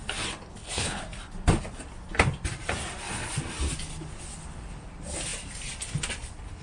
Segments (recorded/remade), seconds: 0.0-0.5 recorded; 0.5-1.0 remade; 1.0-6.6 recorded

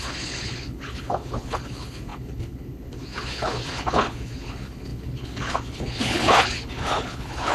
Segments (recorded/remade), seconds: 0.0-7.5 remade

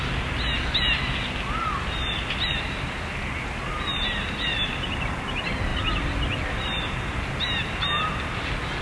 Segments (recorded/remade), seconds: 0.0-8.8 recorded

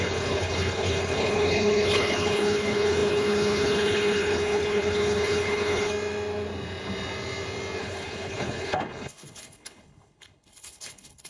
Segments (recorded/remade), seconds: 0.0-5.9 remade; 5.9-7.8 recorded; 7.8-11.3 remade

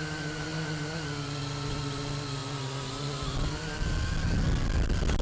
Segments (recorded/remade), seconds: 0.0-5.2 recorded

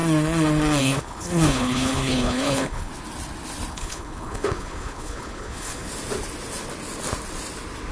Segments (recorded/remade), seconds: 0.0-0.8 recorded; 0.8-2.9 remade; 2.9-3.7 recorded; 3.7-5.9 remade; 5.9-7.9 recorded

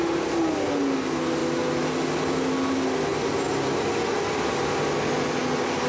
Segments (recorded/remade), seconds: 0.0-5.9 recorded

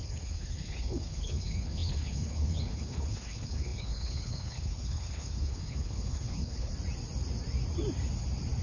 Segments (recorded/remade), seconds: 0.0-6.7 remade; 6.7-8.6 recorded